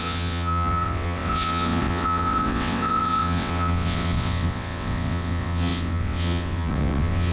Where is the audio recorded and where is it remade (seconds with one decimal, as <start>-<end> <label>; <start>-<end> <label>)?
0.0-7.3 remade